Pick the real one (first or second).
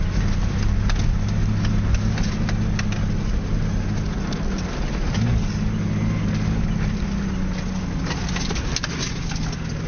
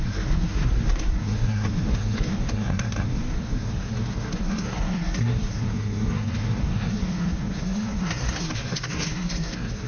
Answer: first